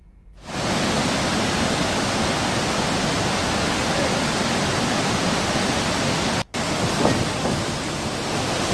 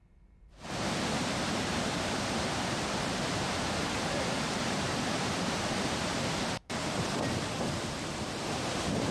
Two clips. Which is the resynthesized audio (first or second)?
second